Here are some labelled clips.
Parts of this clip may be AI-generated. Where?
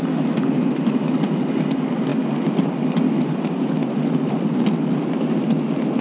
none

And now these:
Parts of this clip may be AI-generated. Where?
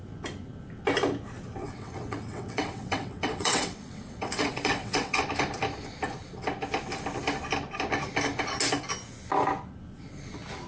1.6-5.2 (vocoder, WaveNeXt)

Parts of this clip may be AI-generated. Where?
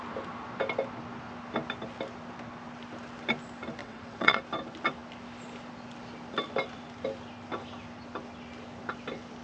3.8-4.4 (vocoder, WaveNeXt)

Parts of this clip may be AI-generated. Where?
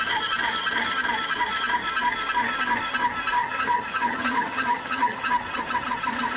3.4-5.3 (vocoder, HiFi-GAN)